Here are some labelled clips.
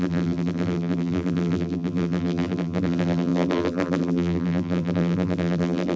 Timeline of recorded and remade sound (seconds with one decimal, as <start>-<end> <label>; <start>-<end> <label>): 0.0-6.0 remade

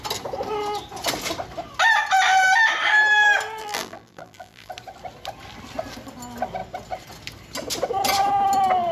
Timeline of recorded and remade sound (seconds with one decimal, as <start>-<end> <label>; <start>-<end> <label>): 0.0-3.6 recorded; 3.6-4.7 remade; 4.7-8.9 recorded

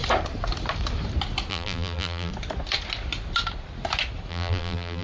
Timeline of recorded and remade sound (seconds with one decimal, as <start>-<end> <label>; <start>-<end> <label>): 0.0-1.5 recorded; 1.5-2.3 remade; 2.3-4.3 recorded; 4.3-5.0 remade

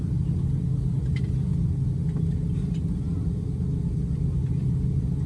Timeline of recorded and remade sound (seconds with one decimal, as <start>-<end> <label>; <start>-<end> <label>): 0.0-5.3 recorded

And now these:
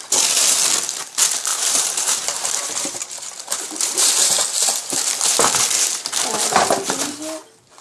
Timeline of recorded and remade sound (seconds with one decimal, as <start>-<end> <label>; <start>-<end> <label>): 0.0-1.5 recorded; 1.5-4.1 remade; 4.1-7.8 recorded

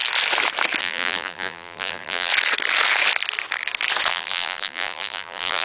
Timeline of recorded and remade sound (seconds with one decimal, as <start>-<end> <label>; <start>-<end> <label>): 0.0-0.8 recorded; 0.8-2.3 remade; 2.3-4.1 recorded; 4.1-5.6 remade

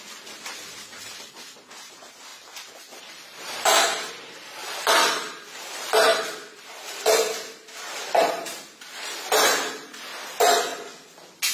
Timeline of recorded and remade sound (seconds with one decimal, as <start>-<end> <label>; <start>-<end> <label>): 0.0-2.3 recorded; 2.3-4.1 remade; 4.1-6.1 recorded; 6.1-7.0 remade; 7.0-10.7 recorded; 10.7-11.5 remade

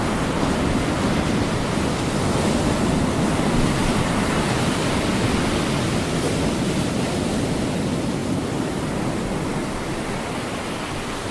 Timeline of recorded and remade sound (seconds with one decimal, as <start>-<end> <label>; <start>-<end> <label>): 0.0-11.3 recorded